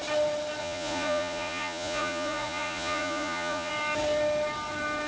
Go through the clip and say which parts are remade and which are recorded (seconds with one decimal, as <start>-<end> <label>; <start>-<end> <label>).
0.0-0.6 recorded; 0.6-3.7 remade; 3.7-5.1 recorded